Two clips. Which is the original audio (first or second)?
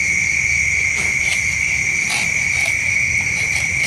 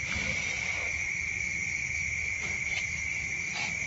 first